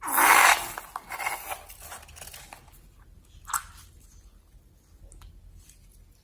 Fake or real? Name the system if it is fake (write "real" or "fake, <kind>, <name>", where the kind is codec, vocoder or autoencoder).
real